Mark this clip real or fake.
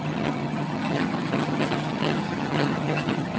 fake